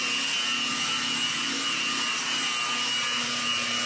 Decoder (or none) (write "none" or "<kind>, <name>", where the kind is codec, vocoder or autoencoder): none